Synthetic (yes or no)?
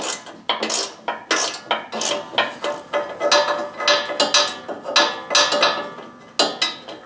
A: no